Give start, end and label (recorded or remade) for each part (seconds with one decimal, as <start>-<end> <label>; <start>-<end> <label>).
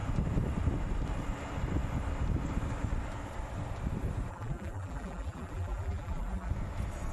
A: 0.0-4.3 recorded; 4.3-6.5 remade; 6.5-7.1 recorded